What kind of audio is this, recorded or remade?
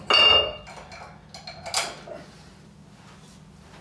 recorded